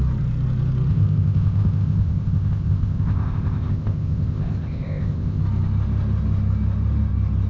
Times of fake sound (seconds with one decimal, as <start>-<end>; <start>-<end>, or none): 0.9-5.4